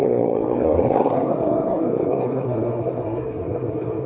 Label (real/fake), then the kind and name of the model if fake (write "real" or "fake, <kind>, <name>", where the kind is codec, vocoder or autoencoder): fake, codec, SNAC